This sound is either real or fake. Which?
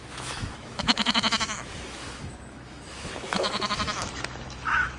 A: fake